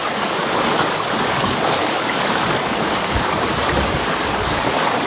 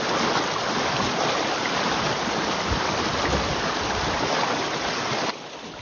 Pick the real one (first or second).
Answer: second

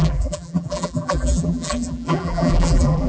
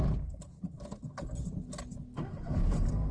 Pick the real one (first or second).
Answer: second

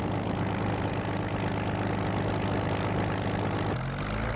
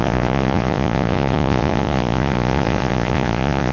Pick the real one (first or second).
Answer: first